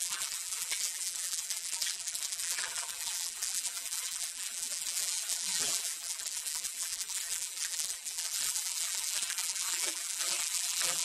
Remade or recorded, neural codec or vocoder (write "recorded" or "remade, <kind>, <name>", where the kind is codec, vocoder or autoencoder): remade, vocoder, BigVGAN v2